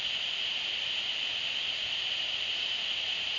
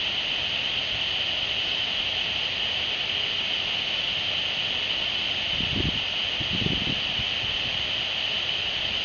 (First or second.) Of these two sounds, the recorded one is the second